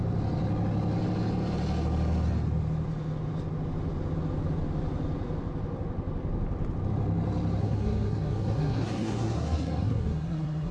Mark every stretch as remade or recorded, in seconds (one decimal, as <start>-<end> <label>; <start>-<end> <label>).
0.0-7.6 recorded; 7.6-10.7 remade